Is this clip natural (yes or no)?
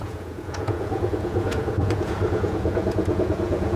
no